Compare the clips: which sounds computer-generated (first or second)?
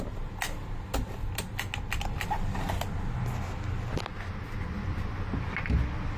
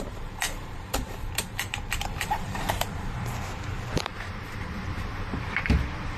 second